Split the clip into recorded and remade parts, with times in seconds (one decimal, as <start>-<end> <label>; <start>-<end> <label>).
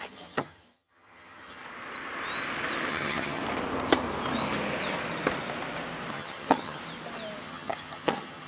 0.0-1.6 remade; 1.6-2.9 recorded; 2.9-3.4 remade; 3.4-6.1 recorded; 6.1-6.8 remade; 6.8-7.4 recorded; 7.4-8.5 remade